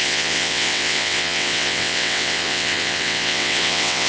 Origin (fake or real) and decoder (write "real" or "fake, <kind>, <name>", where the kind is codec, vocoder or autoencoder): fake, vocoder, WaveNeXt